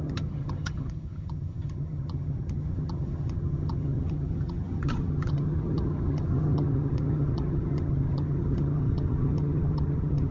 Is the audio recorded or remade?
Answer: remade